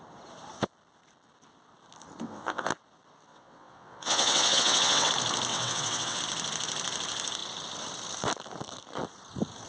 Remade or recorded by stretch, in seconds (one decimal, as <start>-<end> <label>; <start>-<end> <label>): 0.0-2.2 recorded; 2.2-2.7 remade; 2.7-3.3 recorded; 3.3-5.1 remade; 5.1-5.5 recorded; 5.5-6.2 remade; 6.2-9.7 recorded